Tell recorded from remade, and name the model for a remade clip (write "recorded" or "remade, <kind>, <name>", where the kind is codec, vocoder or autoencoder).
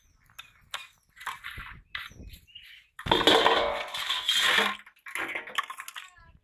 recorded